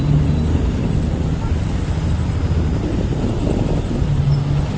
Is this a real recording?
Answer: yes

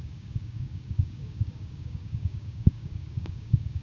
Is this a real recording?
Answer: no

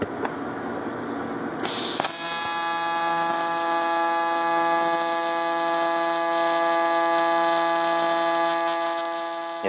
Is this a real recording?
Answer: yes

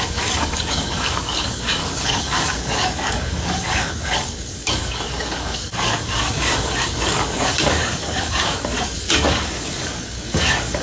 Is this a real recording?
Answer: no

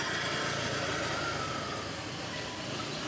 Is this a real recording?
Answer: yes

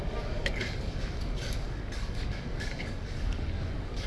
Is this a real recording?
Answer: no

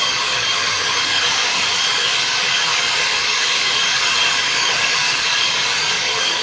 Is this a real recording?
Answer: no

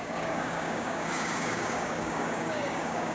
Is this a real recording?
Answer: no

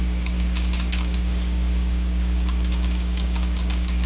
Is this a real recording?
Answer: no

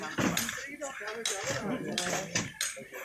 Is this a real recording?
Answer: yes